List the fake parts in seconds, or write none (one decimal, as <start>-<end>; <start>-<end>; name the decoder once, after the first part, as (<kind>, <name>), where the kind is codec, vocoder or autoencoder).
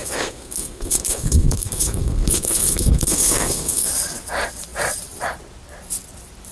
0.0-3.9 (codec, SNAC)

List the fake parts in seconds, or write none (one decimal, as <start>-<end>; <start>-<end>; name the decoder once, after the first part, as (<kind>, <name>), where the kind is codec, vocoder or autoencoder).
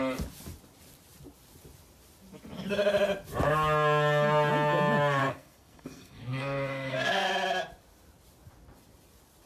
5.2-7.3 (codec, SNAC)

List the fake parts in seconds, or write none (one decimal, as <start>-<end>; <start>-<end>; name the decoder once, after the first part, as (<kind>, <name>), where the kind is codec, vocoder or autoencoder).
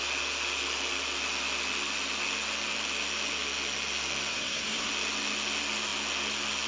4.3-4.9 (codec, SNAC)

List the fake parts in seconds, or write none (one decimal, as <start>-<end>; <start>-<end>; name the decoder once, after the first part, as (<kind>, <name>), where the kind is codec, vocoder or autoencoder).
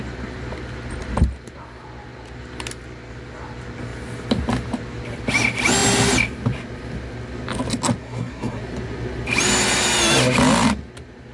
8.0-8.6 (codec, SNAC)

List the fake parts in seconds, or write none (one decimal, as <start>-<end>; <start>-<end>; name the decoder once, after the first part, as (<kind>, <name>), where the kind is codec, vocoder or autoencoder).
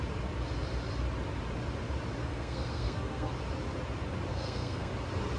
2.2-3.3 (codec, SNAC); 4.3-4.9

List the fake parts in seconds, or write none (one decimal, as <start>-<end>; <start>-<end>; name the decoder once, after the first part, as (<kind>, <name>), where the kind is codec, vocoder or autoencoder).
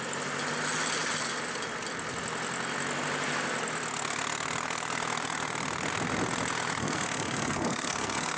6.8-8.4 (codec, SNAC)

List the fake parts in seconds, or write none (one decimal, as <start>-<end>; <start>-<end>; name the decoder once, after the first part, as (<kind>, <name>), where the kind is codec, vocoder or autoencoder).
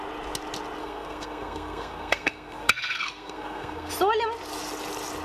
0.8-3.9 (codec, SNAC)